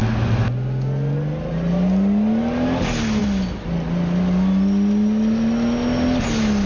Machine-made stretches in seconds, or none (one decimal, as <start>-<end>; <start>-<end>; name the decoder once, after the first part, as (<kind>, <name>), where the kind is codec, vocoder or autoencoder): none